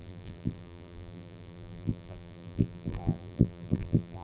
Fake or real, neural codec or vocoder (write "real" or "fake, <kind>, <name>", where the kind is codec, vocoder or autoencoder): fake, vocoder, BigVGAN v2